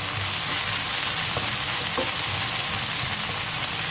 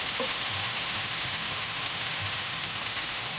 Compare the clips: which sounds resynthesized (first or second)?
second